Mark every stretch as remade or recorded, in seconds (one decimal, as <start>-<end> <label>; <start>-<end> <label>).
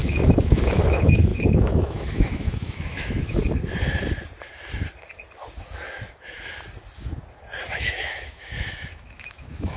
0.0-3.4 remade; 3.4-7.7 recorded; 7.7-9.8 remade